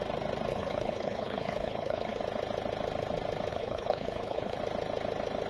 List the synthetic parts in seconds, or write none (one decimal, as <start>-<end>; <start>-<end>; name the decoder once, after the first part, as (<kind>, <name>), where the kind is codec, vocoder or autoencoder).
0.5-2.2 (codec, HILCodec); 3.5-4.6